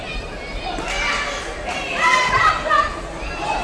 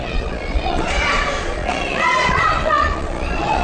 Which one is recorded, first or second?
first